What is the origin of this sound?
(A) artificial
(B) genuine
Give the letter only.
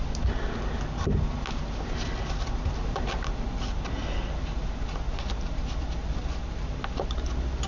B